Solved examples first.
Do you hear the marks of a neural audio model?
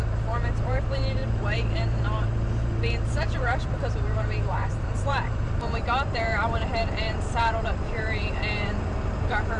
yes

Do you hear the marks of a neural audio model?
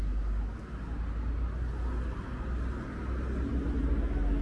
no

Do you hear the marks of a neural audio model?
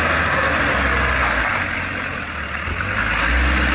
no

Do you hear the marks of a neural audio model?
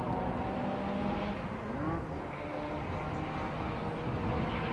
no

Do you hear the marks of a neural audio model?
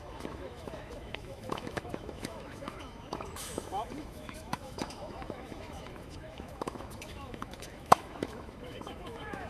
yes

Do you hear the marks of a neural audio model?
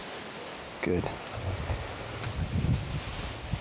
no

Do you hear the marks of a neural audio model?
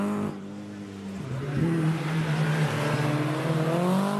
no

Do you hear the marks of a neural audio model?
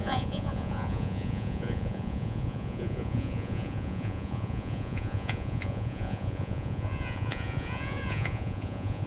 yes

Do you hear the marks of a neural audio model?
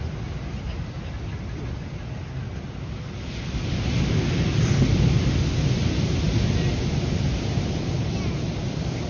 no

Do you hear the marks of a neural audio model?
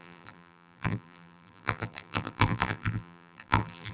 yes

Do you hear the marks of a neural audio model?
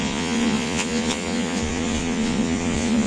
yes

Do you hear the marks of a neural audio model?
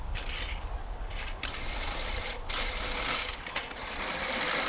yes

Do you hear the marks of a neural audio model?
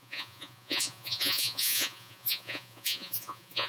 yes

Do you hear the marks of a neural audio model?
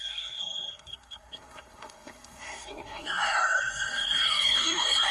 yes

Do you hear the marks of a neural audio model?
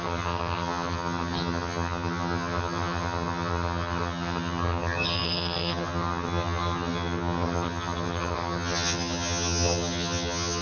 yes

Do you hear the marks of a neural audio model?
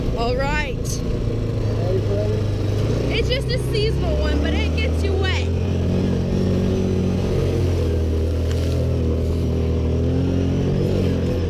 no